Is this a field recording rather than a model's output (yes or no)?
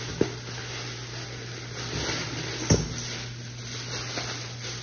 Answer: yes